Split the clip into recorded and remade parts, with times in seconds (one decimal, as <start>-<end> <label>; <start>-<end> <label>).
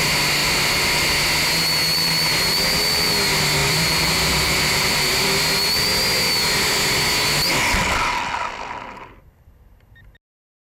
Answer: 0.0-0.4 recorded; 0.4-1.1 remade; 1.1-3.6 recorded; 3.6-5.4 remade; 5.4-10.7 recorded